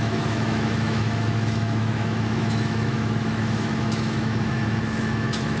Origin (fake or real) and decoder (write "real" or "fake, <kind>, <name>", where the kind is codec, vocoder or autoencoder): fake, autoencoder, DAC-VAE